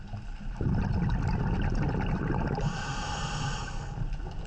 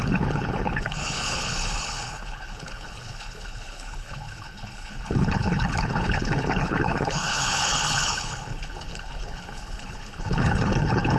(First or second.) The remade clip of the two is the second